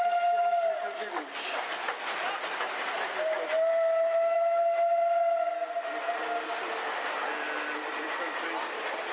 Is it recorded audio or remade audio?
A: recorded